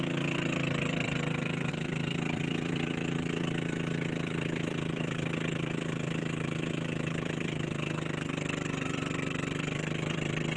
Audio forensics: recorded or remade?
remade